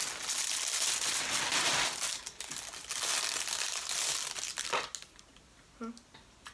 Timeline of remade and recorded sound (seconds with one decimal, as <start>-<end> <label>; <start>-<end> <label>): 0.0-6.5 recorded